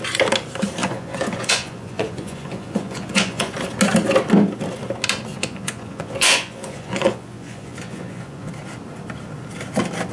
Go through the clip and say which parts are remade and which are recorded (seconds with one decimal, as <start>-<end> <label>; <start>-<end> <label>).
0.0-0.8 recorded; 0.8-3.5 remade; 3.5-5.3 recorded; 5.3-8.5 remade; 8.5-10.1 recorded